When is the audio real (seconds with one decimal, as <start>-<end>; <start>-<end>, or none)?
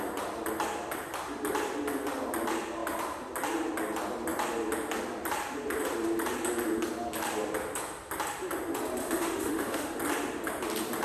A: 0.0-9.0; 10.0-11.0